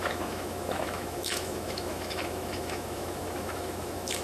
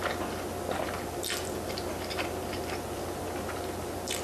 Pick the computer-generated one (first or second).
first